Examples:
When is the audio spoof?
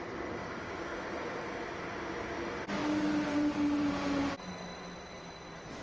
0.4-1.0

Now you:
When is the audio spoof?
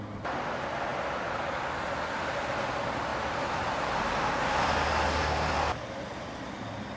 none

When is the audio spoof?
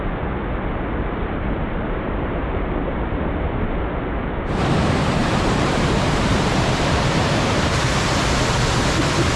1.2-3.3; 5.2-8.4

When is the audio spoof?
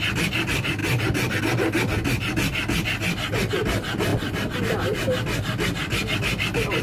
none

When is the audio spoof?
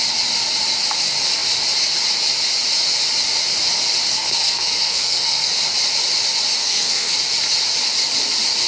4.1-5.5; 6.6-7.2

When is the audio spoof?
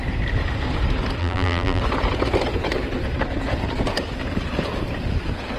1.2-1.8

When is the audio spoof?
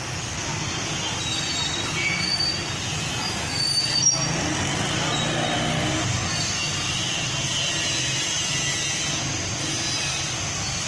none